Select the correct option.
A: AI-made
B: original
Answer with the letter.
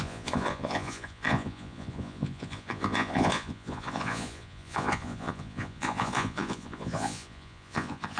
A